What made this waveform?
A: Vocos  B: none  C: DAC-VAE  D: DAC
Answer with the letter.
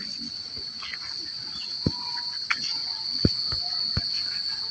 B